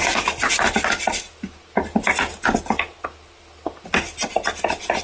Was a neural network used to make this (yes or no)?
no